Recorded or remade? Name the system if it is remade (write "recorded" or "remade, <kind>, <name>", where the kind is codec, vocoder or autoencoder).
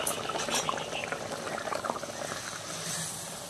recorded